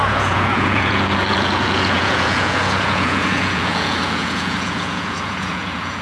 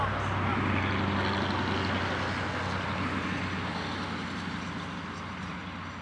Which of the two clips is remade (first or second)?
first